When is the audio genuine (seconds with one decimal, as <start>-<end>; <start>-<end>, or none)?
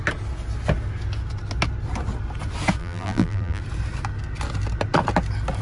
0.0-2.8; 3.6-5.6